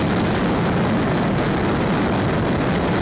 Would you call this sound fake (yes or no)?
no